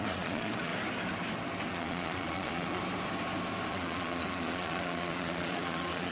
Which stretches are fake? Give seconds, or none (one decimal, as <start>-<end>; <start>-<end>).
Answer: 0.0-0.7; 1.7-2.8; 3.7-6.1